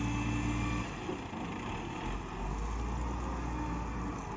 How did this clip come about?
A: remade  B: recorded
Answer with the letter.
B